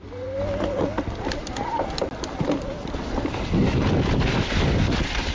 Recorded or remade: recorded